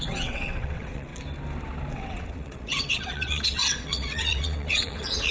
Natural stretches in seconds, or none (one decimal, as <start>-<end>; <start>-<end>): 1.1-1.9